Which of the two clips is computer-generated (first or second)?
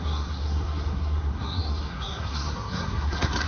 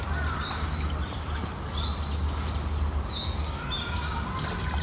first